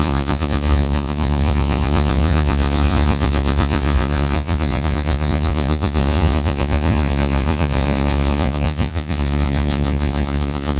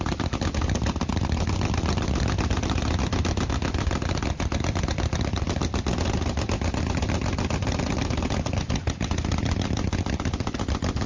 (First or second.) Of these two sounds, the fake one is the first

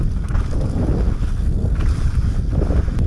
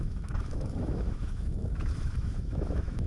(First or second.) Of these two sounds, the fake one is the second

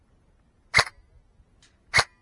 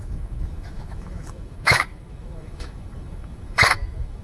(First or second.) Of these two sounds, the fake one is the second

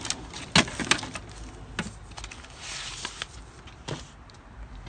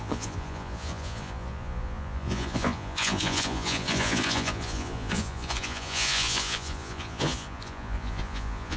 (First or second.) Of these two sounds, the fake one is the second